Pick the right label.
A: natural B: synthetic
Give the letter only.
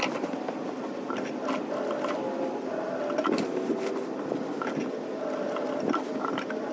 A